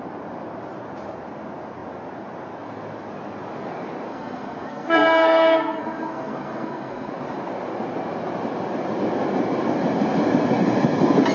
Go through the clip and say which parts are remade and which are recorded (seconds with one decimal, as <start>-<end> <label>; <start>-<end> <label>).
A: 0.0-4.1 recorded; 4.1-7.1 remade; 7.1-11.3 recorded